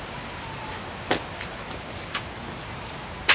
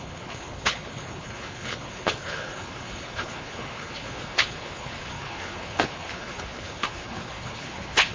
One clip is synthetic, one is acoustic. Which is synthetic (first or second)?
second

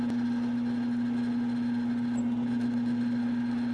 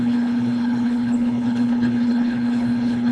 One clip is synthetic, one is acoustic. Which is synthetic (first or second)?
second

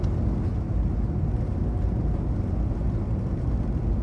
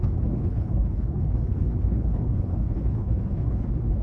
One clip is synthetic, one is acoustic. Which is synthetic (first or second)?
second